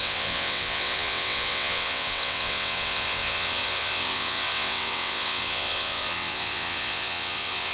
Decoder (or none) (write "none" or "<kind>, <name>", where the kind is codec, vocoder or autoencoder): vocoder, WaveNeXt